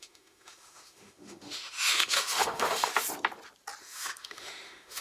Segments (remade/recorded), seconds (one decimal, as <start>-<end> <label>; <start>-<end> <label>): 0.0-2.9 remade; 2.9-3.8 recorded; 3.8-5.0 remade